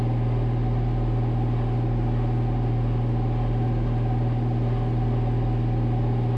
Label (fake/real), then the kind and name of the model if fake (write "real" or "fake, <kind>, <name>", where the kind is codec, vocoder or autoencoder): real